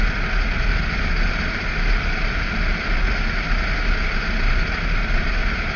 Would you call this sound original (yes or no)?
yes